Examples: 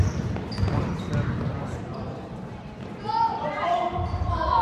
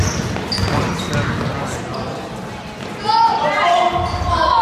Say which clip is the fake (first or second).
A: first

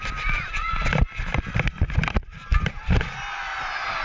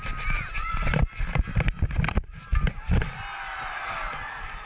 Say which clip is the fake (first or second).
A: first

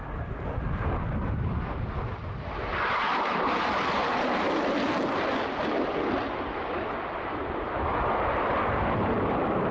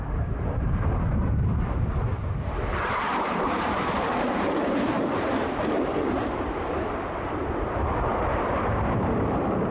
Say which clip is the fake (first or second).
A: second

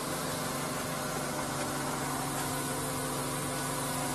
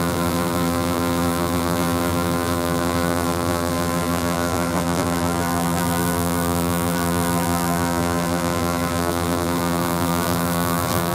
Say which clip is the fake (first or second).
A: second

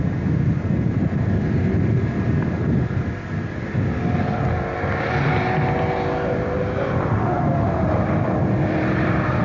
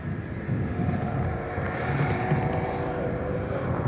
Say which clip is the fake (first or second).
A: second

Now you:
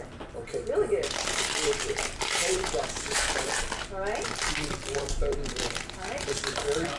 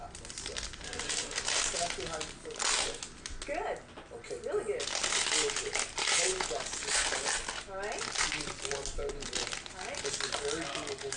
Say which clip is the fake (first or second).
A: first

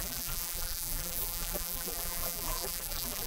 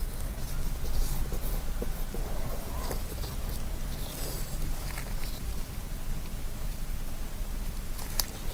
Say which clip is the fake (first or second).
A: first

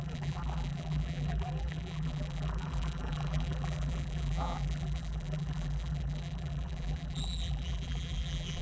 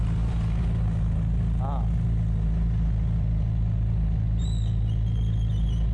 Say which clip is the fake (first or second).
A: first